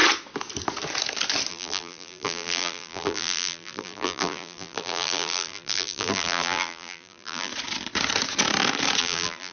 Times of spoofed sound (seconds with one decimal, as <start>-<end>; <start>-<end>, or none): 1.5-7.5; 9.0-9.5